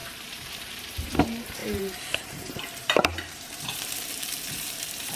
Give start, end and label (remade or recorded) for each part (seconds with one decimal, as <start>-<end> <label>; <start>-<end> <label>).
0.0-5.2 remade